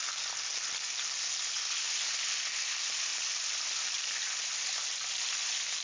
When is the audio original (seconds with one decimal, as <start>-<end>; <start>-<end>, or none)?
0.0-5.8